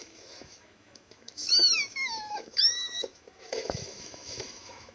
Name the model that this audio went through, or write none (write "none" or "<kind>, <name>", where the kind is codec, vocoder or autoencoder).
autoencoder, DAC-VAE